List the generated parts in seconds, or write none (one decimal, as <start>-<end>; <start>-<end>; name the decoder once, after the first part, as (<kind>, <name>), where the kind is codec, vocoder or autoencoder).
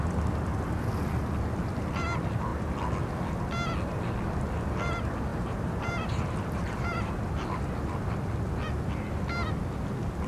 5.3-7.1 (vocoder, BigVGAN v2)